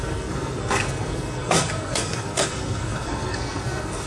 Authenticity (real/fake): fake